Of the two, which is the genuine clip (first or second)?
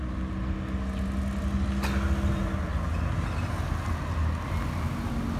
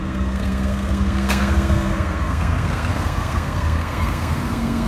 first